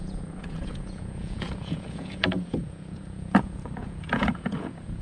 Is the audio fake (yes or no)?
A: yes